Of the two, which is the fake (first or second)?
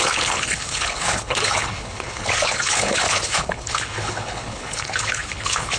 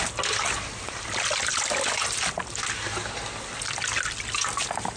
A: first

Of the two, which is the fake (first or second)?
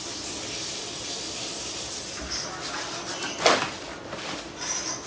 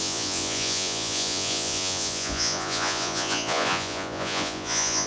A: second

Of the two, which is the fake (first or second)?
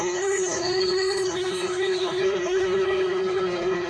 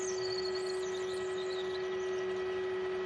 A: first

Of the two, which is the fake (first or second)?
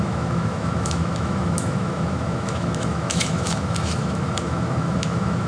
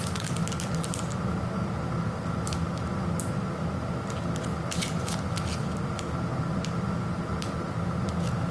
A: first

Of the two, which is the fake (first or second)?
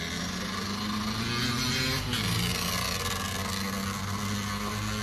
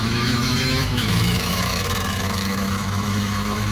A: second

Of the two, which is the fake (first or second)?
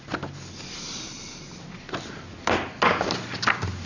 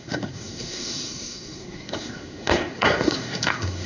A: second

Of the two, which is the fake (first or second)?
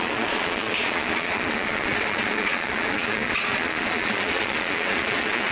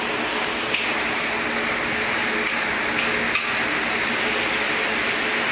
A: first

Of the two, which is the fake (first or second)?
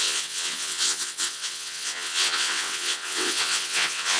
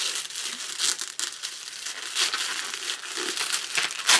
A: first